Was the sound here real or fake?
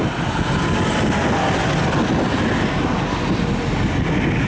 real